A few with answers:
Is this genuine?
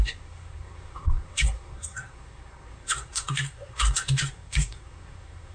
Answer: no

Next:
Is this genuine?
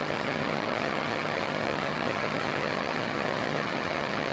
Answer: no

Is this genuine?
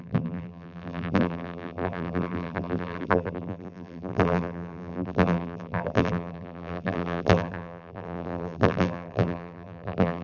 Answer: no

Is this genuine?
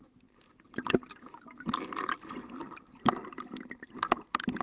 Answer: yes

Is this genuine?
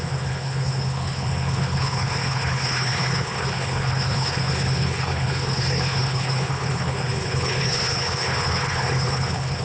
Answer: no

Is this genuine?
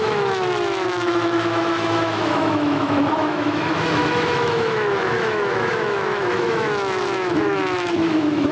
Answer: no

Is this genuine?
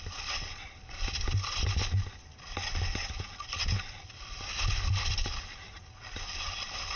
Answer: yes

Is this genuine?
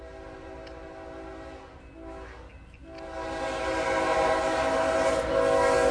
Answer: yes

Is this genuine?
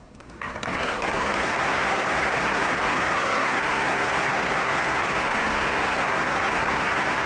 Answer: no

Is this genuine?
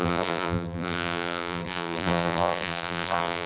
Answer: no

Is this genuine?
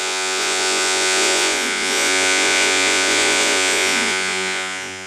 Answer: no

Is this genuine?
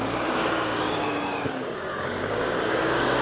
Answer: no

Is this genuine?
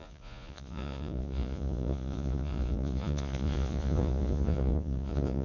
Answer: no